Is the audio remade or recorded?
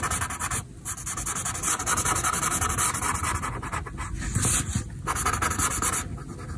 recorded